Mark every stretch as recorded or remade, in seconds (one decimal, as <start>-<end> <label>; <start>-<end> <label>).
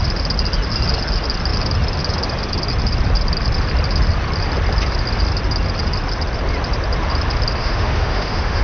0.0-7.6 recorded; 7.6-8.6 remade